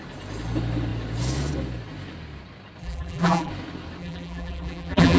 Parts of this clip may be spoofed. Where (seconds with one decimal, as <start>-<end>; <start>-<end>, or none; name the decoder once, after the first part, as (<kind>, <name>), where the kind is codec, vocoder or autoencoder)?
2.8-3.5 (vocoder, BigVGAN v2); 4.0-5.2